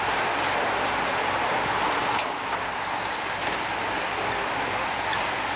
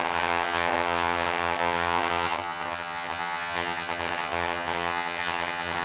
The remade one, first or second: second